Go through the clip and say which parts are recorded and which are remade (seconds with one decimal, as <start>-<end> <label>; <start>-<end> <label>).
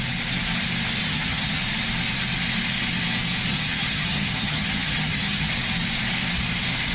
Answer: 0.0-1.0 recorded; 1.0-1.6 remade; 1.6-3.5 recorded; 3.5-5.5 remade; 5.5-6.9 recorded